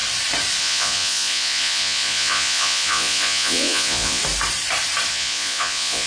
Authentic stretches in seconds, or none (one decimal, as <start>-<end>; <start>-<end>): 0.0-0.6; 4.2-5.1